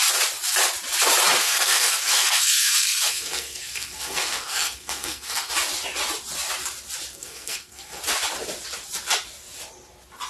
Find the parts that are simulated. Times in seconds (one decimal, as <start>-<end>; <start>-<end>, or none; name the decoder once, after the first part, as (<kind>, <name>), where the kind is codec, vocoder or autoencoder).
1.4-5.5 (codec, SNAC); 7.1-8.0